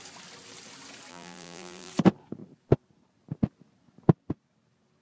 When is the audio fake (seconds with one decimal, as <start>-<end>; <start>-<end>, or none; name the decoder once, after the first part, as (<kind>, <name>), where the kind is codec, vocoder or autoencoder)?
1.1-1.9 (vocoder, BigVGAN v2)